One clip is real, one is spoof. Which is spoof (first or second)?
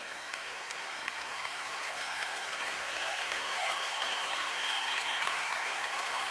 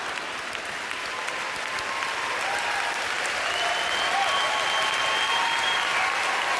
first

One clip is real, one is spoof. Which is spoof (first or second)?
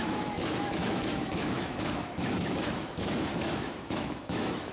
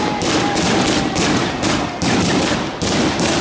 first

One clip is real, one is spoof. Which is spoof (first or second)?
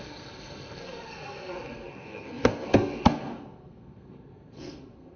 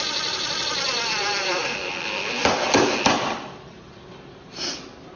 first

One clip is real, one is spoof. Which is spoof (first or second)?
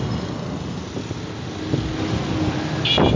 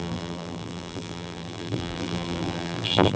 second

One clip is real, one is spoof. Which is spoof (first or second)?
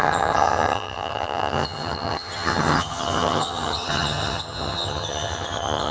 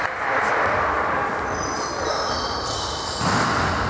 first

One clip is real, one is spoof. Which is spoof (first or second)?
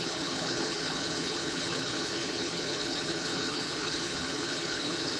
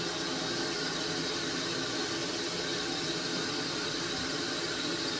first